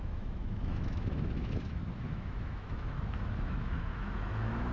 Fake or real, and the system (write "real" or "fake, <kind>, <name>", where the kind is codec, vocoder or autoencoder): fake, autoencoder, DAC-VAE